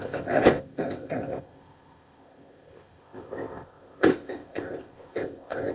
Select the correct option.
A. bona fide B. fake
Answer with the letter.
B